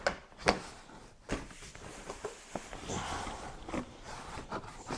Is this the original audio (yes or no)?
yes